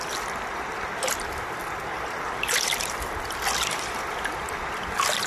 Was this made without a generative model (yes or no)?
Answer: yes